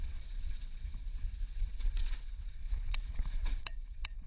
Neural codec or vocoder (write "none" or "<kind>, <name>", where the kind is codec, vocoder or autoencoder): vocoder, WaveNeXt